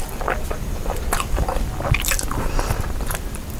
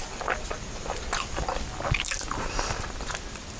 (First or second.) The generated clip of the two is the first